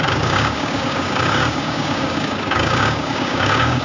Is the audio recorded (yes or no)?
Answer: no